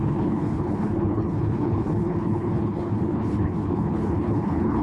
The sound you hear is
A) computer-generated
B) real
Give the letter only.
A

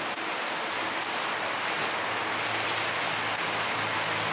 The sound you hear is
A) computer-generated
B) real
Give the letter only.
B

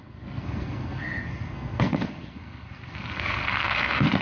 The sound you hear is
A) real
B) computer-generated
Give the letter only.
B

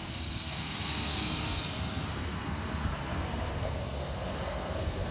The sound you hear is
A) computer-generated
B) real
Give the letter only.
A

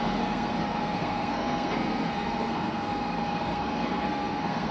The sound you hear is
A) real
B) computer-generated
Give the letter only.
B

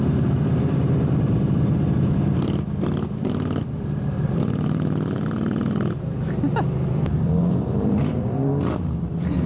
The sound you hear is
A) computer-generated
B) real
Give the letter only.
A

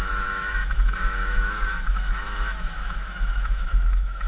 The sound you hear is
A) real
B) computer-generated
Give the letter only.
B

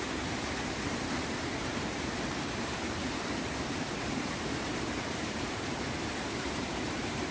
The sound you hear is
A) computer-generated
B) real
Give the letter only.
A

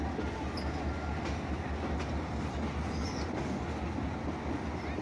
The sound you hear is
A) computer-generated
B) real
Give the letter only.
B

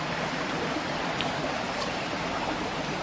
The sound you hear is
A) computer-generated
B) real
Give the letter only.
B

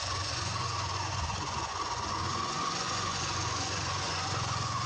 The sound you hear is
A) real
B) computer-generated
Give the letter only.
B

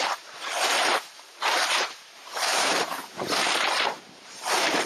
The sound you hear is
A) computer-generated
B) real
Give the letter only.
A